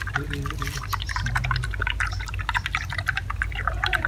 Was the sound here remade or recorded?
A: recorded